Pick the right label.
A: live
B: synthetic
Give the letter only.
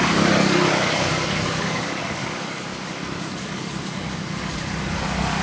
B